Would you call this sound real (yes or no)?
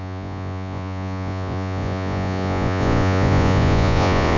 no